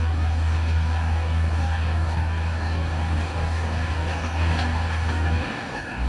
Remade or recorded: remade